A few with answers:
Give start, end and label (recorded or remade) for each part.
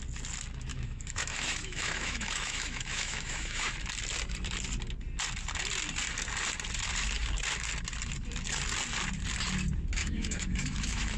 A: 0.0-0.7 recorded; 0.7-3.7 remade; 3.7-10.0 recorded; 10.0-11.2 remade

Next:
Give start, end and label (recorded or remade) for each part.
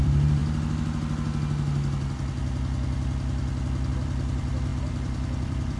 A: 0.0-0.4 remade; 0.4-3.9 recorded; 3.9-5.8 remade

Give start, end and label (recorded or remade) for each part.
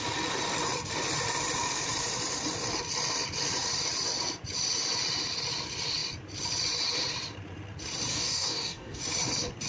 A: 0.0-8.1 recorded; 8.1-9.0 remade; 9.0-9.7 recorded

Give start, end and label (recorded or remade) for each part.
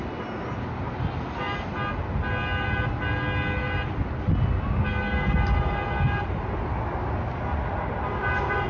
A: 0.0-8.7 recorded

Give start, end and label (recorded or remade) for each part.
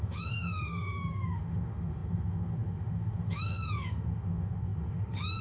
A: 0.0-5.4 remade